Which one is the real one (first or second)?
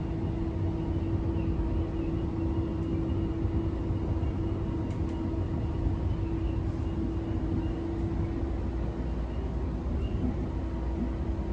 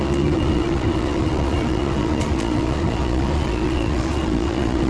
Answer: first